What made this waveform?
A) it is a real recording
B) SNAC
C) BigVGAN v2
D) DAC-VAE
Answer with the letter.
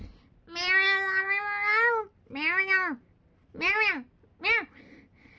A